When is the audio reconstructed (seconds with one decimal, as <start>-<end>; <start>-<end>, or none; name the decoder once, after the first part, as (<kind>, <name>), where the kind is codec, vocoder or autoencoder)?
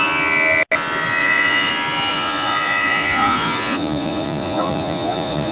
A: 1.2-1.7 (vocoder, Vocos); 2.1-5.5